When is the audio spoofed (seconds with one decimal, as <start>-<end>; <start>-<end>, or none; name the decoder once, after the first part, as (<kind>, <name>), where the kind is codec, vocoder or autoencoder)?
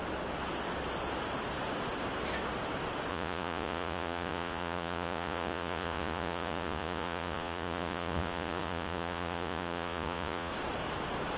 3.1-10.5 (vocoder, Vocos)